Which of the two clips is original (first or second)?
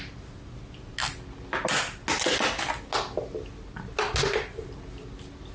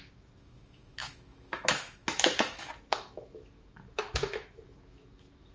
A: first